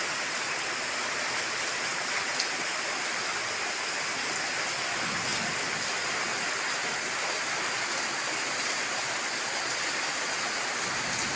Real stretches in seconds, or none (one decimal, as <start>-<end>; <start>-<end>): 0.0-11.4